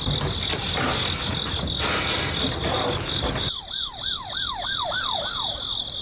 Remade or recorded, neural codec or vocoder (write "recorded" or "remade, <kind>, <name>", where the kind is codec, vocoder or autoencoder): recorded